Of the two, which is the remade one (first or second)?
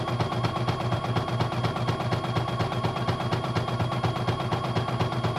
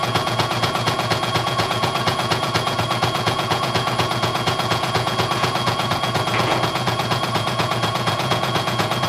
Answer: second